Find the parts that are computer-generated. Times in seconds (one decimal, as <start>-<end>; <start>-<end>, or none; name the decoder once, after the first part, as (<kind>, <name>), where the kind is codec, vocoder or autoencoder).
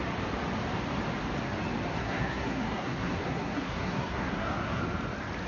2.0-4.8 (codec, SNAC)